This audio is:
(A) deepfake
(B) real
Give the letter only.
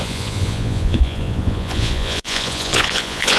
A